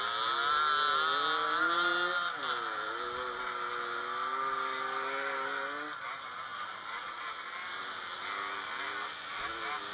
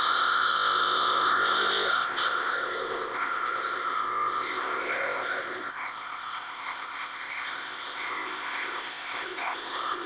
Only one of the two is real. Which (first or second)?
first